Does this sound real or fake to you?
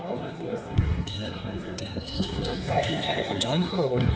fake